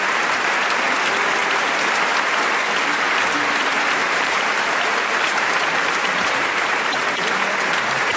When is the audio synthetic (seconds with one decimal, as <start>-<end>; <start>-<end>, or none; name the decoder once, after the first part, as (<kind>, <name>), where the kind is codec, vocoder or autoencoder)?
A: 1.4-1.9 (vocoder, BigVGAN v2); 4.0-6.8